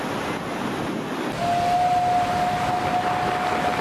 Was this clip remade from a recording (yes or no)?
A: no